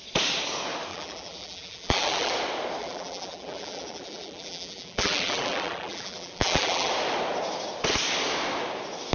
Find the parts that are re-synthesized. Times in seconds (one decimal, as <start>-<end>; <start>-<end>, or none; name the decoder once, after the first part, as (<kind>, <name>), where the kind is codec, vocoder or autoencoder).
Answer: 0.9-2.3 (vocoder, BigVGAN v2); 2.8-6.9